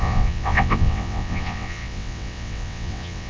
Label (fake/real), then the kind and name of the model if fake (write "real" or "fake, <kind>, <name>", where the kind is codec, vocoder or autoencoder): fake, vocoder, WaveNeXt